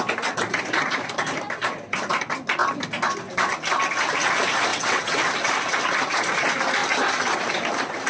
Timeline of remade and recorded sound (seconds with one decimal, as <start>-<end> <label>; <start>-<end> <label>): 0.0-4.7 recorded; 4.7-5.2 remade; 5.2-8.1 recorded

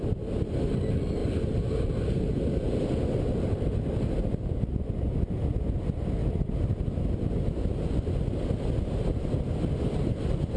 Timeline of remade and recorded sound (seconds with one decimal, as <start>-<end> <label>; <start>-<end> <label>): 0.0-10.6 recorded

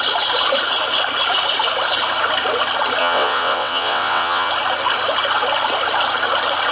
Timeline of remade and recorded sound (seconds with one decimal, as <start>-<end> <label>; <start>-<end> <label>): 0.0-3.0 recorded; 3.0-4.5 remade; 4.5-6.7 recorded